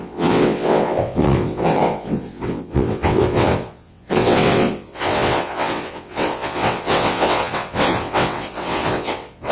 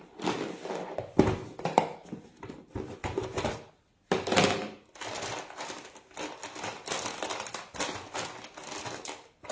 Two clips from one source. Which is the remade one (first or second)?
first